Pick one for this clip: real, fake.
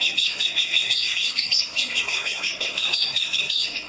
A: fake